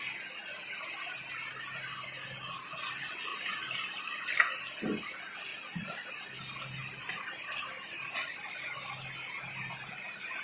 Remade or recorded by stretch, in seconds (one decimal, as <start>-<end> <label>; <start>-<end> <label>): 0.0-3.3 recorded; 3.3-4.0 remade; 4.0-10.4 recorded